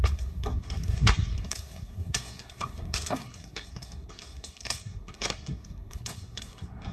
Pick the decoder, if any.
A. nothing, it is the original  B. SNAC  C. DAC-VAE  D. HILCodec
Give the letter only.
B